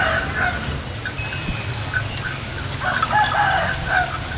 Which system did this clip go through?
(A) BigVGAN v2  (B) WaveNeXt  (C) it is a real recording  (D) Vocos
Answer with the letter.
C